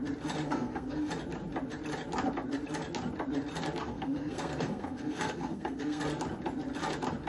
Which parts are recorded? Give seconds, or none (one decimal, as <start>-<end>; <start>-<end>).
0.0-0.4; 1.1-3.8; 6.0-7.3